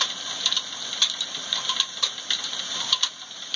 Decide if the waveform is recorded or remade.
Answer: recorded